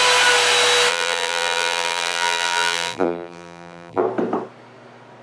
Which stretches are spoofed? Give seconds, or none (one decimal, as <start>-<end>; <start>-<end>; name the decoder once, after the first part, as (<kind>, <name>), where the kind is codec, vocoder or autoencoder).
0.9-4.0 (vocoder, BigVGAN v2)